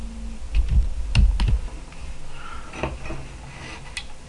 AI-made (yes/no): no